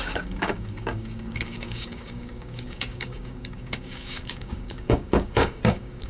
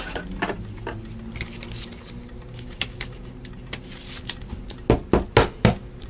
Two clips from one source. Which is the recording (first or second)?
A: second